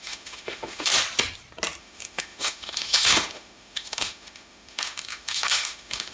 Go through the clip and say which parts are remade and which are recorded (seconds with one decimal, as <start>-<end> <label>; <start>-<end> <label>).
0.0-0.9 remade; 0.9-1.8 recorded; 1.8-6.1 remade